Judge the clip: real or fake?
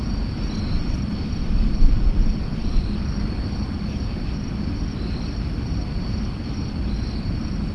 real